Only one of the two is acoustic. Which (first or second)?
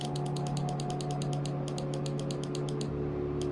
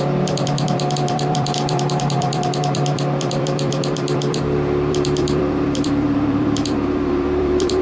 first